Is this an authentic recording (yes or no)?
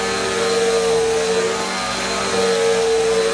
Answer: yes